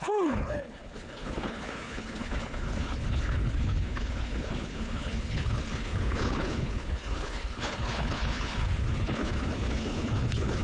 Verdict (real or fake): fake